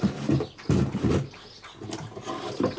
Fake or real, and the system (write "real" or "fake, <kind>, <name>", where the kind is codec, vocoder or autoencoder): real